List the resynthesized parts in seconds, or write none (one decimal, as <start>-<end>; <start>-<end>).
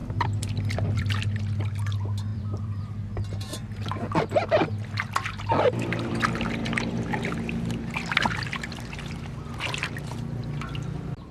0.0-1.1; 2.3-2.8